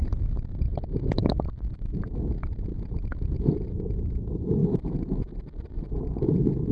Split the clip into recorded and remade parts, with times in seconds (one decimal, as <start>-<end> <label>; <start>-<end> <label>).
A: 0.0-0.7 recorded; 0.7-2.2 remade; 2.2-2.7 recorded; 2.7-3.5 remade; 3.5-4.6 recorded; 4.6-5.2 remade; 5.2-6.7 recorded